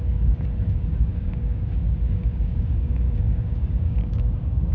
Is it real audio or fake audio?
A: fake